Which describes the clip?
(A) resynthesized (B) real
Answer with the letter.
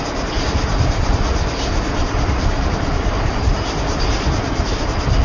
B